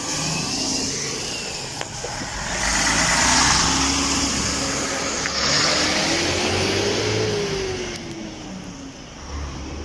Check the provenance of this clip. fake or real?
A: real